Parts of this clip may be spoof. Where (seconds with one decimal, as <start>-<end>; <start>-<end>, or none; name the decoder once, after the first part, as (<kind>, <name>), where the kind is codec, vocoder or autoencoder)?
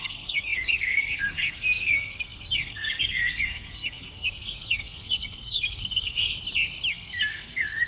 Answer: 0.0-6.3 (codec, SNAC); 6.9-7.9